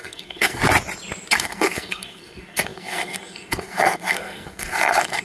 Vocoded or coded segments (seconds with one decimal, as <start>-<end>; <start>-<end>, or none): 0.0-0.6; 1.3-5.2